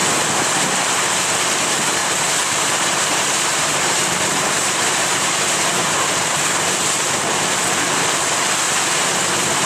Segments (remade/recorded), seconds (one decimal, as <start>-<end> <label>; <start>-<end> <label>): 0.0-2.0 recorded; 2.0-7.2 remade; 7.2-9.7 recorded